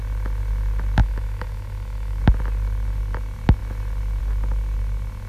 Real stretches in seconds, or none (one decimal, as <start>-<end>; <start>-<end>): 0.0-1.0; 2.2-5.3